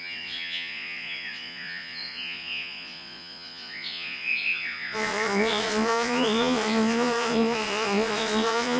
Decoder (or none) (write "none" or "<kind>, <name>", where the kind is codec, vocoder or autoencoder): vocoder, Vocos